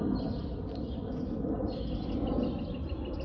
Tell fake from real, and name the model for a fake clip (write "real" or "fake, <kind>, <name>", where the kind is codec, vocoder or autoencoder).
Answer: real